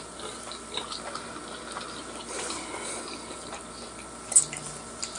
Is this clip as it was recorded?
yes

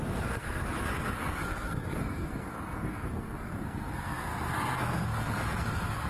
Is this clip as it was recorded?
no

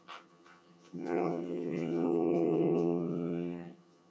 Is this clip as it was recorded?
no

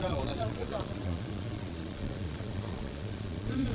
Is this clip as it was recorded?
no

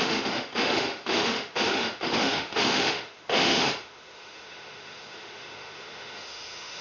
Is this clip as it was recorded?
no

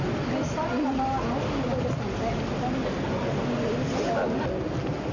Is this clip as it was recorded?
yes